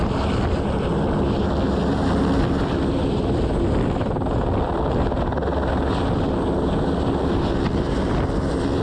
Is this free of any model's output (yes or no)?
yes